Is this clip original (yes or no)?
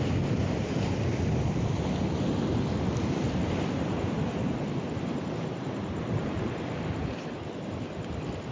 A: no